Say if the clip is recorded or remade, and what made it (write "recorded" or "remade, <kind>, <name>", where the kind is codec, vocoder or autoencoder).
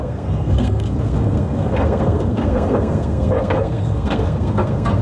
remade, codec, SNAC